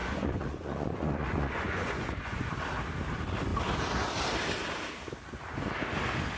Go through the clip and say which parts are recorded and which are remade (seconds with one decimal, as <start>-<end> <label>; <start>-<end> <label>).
0.0-2.5 remade; 2.5-6.4 recorded